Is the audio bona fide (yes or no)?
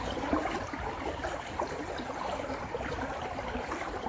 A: yes